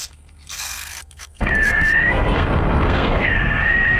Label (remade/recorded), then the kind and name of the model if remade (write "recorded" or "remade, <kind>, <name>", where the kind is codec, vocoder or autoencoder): remade, codec, SNAC